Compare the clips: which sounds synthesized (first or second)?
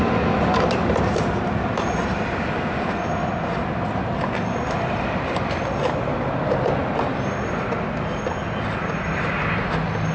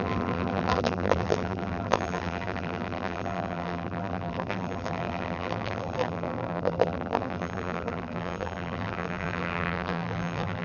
second